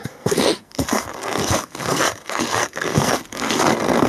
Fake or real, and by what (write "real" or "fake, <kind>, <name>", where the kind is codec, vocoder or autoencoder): fake, codec, SNAC